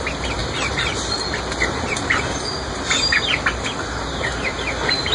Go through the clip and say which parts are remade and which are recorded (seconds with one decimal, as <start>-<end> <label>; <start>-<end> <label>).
0.0-0.4 recorded; 0.4-3.0 remade; 3.0-5.1 recorded